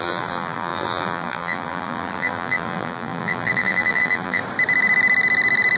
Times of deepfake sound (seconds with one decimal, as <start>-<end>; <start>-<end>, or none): 0.0-4.4